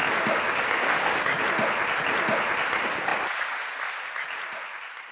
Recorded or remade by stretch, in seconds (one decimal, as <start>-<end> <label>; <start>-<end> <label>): 0.0-1.4 remade; 1.4-5.1 recorded